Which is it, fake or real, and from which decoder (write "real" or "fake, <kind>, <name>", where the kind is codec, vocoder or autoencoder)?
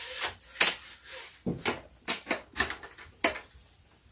real